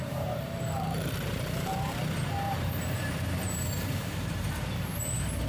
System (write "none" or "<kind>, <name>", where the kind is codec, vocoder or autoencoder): vocoder, BigVGAN v2